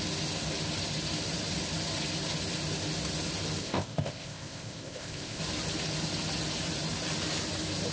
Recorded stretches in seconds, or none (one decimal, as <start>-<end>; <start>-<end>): 0.0-3.6; 5.4-7.9